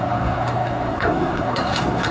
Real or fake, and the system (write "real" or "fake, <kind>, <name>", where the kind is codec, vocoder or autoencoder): fake, codec, SNAC